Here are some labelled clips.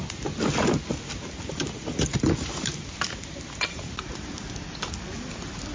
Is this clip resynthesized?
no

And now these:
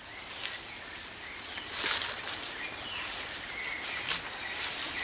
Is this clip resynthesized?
no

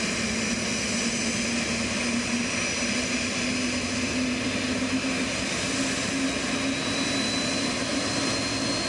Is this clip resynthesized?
no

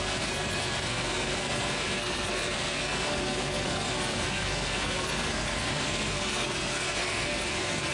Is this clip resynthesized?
yes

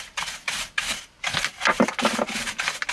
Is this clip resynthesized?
no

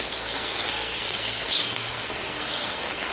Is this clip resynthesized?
yes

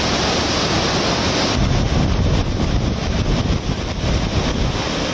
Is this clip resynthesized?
no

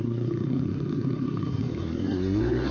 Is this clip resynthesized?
yes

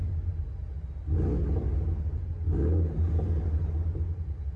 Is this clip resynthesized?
no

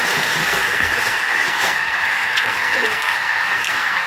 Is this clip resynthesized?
yes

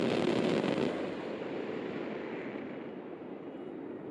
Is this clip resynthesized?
no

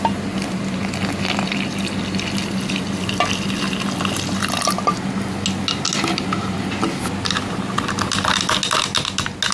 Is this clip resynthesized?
no